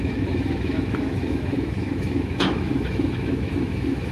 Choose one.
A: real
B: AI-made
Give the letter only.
B